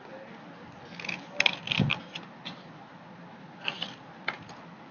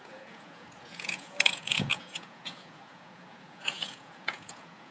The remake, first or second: second